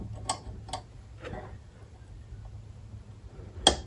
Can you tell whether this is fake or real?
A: real